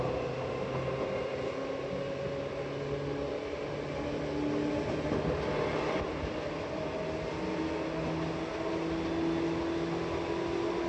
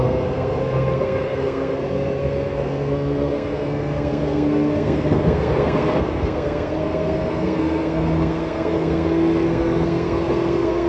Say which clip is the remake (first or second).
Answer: second